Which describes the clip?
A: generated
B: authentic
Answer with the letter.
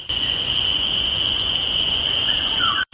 A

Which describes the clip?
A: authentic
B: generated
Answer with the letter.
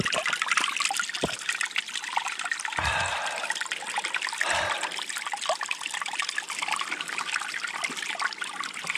A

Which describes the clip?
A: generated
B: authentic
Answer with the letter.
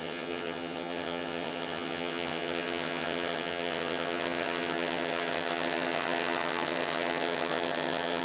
A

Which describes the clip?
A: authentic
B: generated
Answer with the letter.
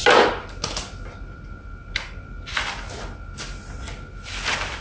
A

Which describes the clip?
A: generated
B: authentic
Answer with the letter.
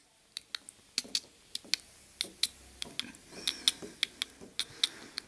B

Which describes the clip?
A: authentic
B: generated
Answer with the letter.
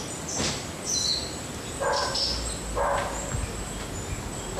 A